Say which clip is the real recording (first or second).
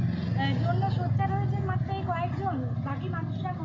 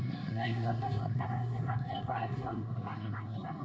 first